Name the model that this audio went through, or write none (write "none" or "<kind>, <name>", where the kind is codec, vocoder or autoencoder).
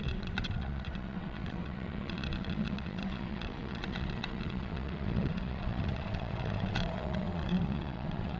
vocoder, WaveNeXt